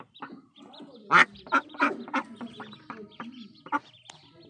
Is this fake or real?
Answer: real